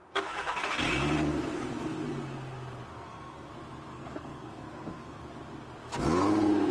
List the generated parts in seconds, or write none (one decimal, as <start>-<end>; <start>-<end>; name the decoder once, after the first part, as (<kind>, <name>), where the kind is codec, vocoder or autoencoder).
0.0-0.8 (codec, SNAC); 2.9-3.5; 3.9-5.3